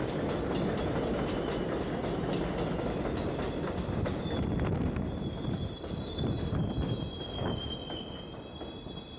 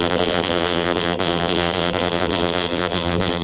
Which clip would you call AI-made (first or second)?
second